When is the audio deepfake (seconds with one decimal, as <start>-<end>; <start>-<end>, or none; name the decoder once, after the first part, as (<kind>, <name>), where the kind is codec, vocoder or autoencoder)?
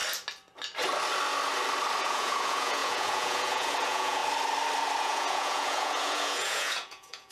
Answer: 2.0-4.2 (vocoder, Vocos); 5.0-7.3